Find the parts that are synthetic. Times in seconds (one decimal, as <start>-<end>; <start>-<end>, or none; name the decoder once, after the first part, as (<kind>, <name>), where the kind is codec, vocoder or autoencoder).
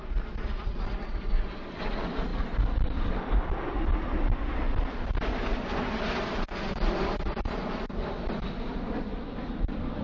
none